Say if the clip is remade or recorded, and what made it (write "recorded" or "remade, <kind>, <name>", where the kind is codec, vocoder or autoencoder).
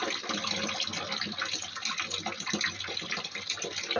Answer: recorded